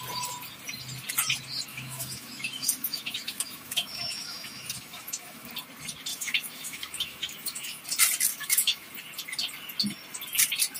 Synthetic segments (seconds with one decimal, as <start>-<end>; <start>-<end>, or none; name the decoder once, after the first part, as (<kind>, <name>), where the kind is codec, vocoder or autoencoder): 1.7-5.5 (autoencoder, DAC-VAE); 6.1-7.8; 8.3-8.9